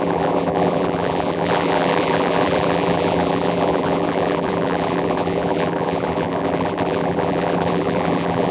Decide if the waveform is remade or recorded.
remade